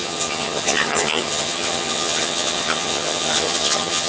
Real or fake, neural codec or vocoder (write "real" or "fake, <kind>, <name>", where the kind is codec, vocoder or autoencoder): fake, vocoder, HiFi-GAN